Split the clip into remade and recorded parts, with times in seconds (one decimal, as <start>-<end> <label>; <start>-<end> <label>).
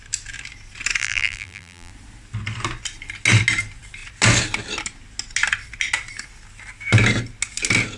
0.0-1.0 recorded; 1.0-1.9 remade; 1.9-8.0 recorded